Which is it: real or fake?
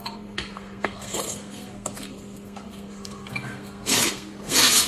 fake